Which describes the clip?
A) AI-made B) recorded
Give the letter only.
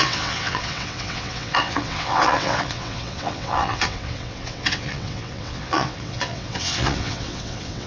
A